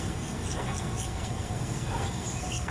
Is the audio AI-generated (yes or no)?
yes